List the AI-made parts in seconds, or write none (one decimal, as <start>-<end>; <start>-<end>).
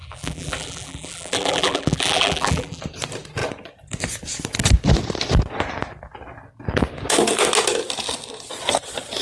0.0-2.8